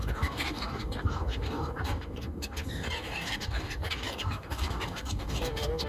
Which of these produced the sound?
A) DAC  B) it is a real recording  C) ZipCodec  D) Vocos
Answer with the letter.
A